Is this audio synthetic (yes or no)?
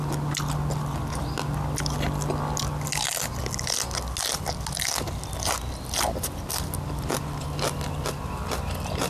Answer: no